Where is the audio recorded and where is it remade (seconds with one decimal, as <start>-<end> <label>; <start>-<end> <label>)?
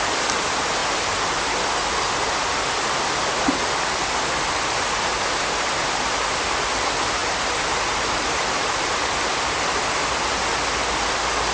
0.0-11.5 recorded